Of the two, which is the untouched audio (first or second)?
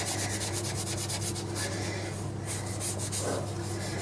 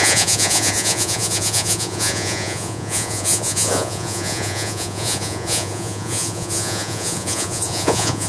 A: first